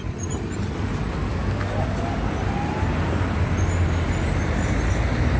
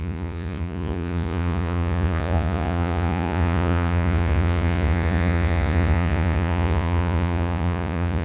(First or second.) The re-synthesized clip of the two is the second